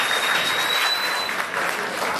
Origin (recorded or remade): recorded